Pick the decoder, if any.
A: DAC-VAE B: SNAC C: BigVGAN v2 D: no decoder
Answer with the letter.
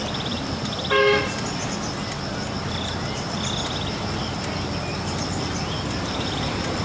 D